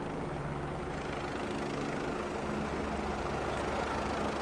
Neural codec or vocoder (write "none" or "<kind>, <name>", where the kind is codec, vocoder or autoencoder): none